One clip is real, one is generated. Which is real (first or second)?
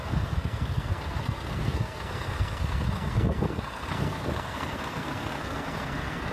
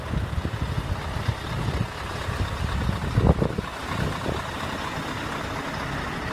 second